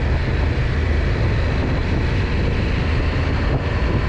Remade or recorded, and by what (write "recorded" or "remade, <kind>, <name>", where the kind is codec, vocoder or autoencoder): recorded